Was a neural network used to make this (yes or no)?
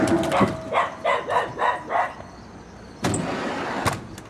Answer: no